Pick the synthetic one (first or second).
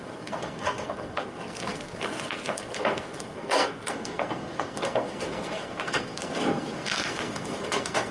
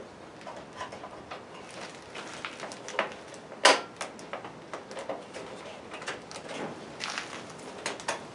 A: first